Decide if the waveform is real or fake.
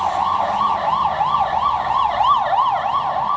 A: real